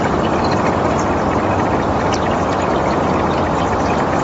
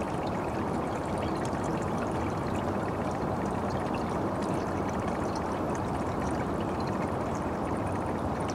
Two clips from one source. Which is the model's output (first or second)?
second